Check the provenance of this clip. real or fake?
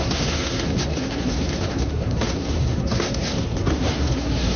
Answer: fake